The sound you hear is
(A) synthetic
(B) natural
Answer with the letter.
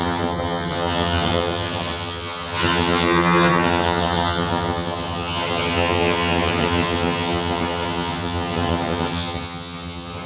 A